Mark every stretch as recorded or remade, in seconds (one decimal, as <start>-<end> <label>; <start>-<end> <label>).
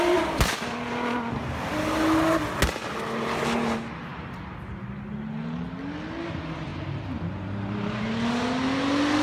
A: 0.0-9.2 recorded